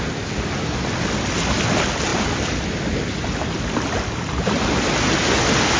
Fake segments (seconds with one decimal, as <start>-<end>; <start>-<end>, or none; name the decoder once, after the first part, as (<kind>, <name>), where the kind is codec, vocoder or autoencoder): none